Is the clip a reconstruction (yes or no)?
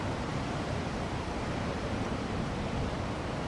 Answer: no